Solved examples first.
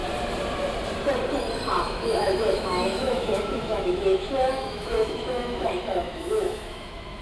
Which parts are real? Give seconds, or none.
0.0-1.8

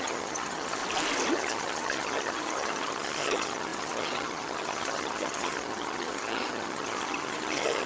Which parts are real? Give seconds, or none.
0.8-1.3